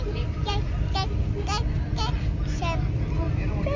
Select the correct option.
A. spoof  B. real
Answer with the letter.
B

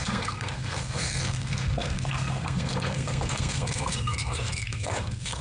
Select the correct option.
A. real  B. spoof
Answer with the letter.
B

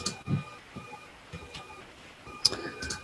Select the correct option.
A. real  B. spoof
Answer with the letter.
B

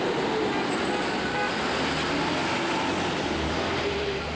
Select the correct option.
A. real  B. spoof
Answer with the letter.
A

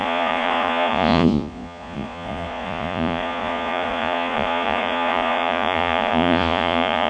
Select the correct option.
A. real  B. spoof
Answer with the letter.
B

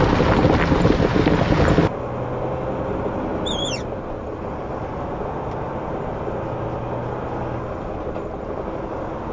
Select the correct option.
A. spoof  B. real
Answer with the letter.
B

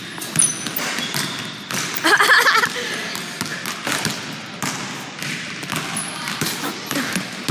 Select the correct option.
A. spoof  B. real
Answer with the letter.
B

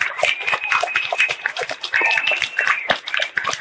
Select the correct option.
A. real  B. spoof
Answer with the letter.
B